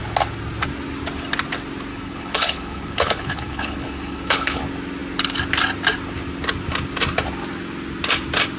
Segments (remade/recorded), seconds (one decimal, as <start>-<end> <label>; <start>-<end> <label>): 0.0-1.9 recorded; 1.9-4.6 remade; 4.6-8.6 recorded